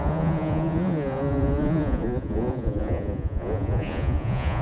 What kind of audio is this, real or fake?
fake